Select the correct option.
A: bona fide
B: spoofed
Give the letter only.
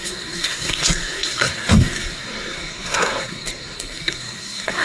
B